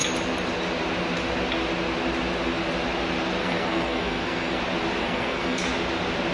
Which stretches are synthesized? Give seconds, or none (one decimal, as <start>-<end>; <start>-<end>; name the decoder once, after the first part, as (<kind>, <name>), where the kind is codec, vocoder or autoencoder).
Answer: 3.4-4.6 (codec, SNAC); 5.0-5.6